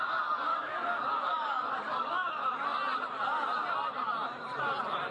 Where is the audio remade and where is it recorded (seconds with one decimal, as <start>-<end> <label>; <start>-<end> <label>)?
0.0-0.5 recorded; 0.5-2.3 remade; 2.3-5.1 recorded

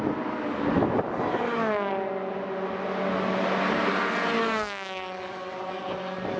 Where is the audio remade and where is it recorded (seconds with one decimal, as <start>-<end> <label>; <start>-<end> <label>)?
0.0-1.3 recorded; 1.3-1.9 remade; 1.9-4.4 recorded; 4.4-5.8 remade; 5.8-6.4 recorded